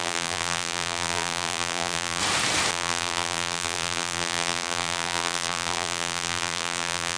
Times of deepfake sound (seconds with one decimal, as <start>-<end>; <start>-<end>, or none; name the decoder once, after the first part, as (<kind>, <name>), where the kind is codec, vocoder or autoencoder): 0.0-2.2 (vocoder, BigVGAN v2); 2.7-7.2

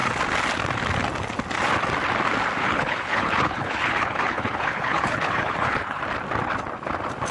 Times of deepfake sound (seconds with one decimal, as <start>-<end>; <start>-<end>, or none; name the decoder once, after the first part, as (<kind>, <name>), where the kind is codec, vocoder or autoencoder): 2.6-6.0 (codec, HILCodec)

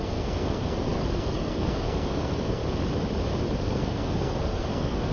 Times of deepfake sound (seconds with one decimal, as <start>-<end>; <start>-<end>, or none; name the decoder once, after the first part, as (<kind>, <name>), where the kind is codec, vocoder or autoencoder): 0.0-2.6 (codec, SNAC); 3.6-5.1